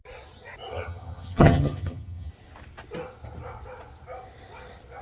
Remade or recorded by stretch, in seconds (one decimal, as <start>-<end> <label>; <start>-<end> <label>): 0.0-0.7 recorded; 0.7-2.3 remade; 2.3-5.0 recorded